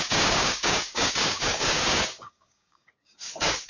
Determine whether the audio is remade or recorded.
remade